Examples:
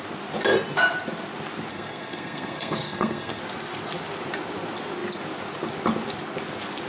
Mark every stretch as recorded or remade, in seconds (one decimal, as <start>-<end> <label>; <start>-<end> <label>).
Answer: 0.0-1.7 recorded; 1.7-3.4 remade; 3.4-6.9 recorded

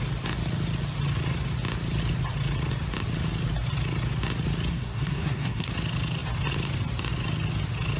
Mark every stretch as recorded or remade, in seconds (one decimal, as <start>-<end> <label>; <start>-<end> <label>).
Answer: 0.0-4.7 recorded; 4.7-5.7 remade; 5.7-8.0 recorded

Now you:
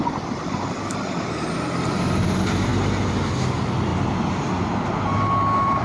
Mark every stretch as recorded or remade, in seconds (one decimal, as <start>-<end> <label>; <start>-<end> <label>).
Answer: 0.0-5.8 recorded

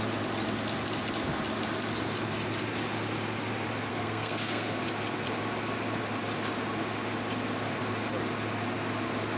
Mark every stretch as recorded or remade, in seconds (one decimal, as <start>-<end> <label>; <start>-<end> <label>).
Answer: 0.0-3.9 recorded; 3.9-4.8 remade; 4.8-9.4 recorded

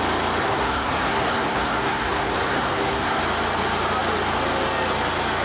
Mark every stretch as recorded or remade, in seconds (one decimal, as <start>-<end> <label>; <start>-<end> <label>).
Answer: 0.0-0.4 recorded; 0.4-3.2 remade; 3.2-5.4 recorded

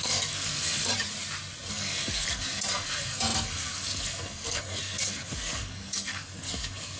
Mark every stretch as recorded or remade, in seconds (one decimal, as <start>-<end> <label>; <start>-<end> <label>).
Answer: 0.0-0.9 remade; 0.9-1.7 recorded; 1.7-7.0 remade

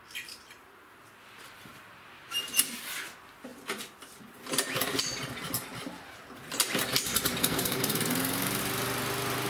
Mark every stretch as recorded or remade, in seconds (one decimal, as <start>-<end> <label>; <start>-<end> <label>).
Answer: 0.0-7.4 recorded; 7.4-8.6 remade; 8.6-9.5 recorded